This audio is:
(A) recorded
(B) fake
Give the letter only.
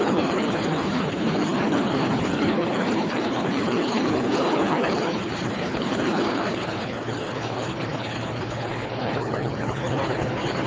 B